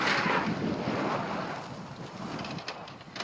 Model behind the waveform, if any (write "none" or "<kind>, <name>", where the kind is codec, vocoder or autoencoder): none